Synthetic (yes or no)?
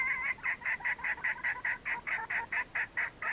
no